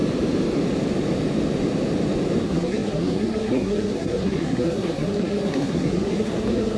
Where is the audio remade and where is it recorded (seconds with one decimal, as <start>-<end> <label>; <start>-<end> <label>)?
0.0-2.4 recorded; 2.4-6.8 remade